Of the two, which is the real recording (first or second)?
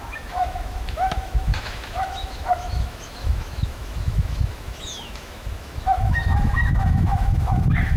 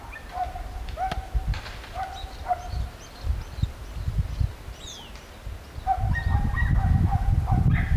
second